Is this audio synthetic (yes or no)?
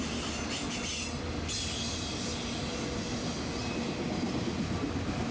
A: no